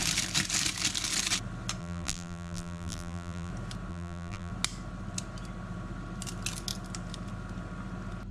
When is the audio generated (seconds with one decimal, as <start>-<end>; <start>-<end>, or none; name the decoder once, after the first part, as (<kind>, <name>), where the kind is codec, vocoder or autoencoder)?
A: 1.8-3.5 (vocoder, BigVGAN v2); 3.9-4.5